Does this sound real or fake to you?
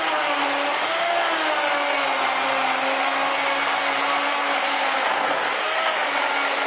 real